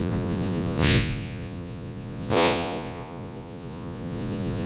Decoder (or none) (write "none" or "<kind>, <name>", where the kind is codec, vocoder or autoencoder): vocoder, Vocos